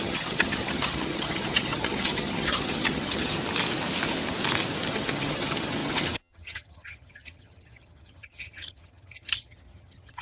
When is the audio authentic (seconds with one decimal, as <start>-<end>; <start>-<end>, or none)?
3.4-4.9

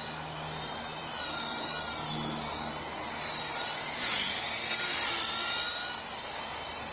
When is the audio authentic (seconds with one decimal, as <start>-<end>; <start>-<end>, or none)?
0.0-6.9

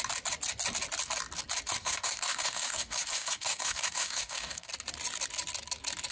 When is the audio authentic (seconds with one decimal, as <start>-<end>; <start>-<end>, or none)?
0.0-1.8; 4.7-6.1

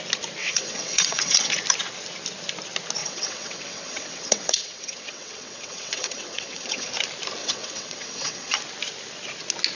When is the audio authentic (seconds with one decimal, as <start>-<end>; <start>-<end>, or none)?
0.0-0.4; 1.5-3.0; 6.9-7.4; 8.6-9.8

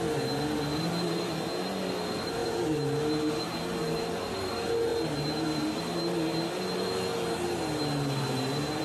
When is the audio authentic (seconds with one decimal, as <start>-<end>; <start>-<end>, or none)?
0.0-8.8

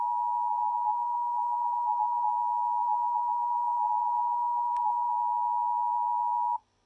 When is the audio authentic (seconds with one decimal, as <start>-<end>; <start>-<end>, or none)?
0.0-0.5; 2.3-2.8; 5.1-6.9

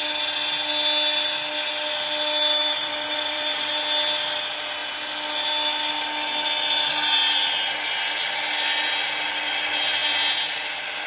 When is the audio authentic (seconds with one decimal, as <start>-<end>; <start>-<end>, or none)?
0.0-2.6; 3.7-11.1

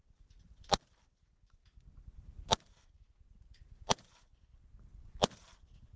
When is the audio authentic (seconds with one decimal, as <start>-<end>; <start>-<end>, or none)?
0.0-6.0